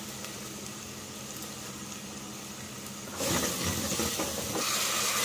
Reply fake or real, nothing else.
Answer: real